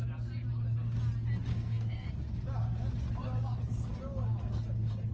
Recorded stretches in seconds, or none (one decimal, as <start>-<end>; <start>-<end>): 0.0-1.5; 2.1-5.1